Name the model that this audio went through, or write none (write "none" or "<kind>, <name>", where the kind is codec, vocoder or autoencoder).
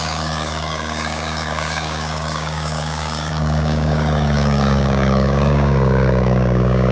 codec, DAC